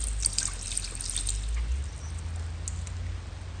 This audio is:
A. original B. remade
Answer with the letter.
A